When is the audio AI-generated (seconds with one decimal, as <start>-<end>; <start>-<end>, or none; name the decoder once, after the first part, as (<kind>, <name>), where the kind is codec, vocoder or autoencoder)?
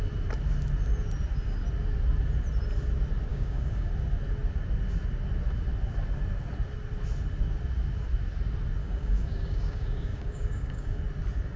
3.3-3.9 (codec, DAC); 8.8-11.0